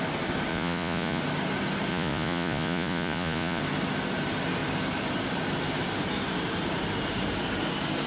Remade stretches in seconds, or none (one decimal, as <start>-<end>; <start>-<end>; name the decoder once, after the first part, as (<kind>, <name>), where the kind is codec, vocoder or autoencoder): 0.5-1.2 (vocoder, Vocos); 1.9-3.6

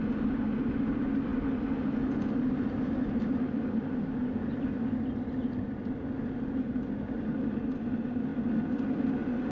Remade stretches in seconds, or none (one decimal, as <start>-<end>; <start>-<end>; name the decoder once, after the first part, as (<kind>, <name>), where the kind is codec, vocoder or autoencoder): none